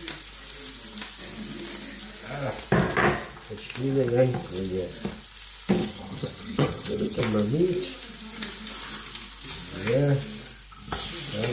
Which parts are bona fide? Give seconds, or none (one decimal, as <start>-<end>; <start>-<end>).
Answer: 0.0-5.8; 7.2-11.5